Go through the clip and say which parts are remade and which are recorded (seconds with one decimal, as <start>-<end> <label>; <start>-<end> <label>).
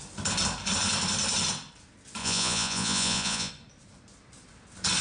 0.0-2.2 recorded; 2.2-3.5 remade; 3.5-5.0 recorded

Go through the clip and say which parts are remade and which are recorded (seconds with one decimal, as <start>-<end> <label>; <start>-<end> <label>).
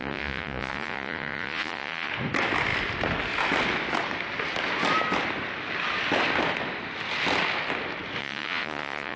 0.0-2.1 remade; 2.1-8.2 recorded; 8.2-9.2 remade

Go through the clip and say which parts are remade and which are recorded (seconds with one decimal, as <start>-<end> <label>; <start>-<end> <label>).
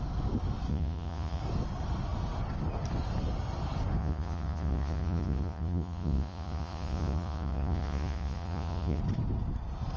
0.0-0.7 recorded; 0.7-1.4 remade; 1.4-4.0 recorded; 4.0-9.0 remade; 9.0-10.0 recorded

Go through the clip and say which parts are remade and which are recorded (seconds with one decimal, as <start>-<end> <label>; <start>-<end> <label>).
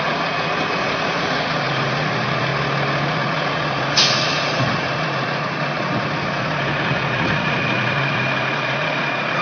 0.0-2.5 remade; 2.5-3.1 recorded; 3.1-9.4 remade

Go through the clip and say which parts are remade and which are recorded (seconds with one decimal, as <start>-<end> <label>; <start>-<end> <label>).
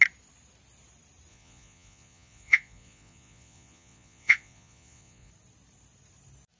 0.0-1.3 recorded; 1.3-5.3 remade; 5.3-6.6 recorded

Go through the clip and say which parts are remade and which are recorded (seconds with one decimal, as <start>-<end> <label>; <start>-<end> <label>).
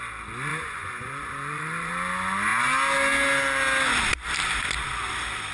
0.0-0.5 recorded; 0.5-1.9 remade; 1.9-5.5 recorded